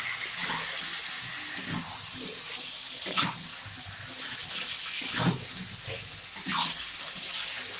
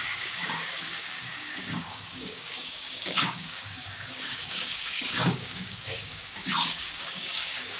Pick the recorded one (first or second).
first